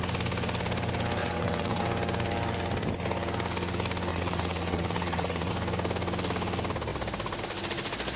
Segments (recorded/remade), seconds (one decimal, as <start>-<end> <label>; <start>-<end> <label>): 0.0-1.2 recorded; 1.2-1.8 remade; 1.8-4.1 recorded; 4.1-5.5 remade; 5.5-8.2 recorded